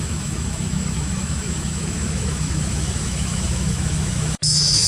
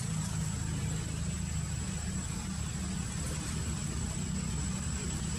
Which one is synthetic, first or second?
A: first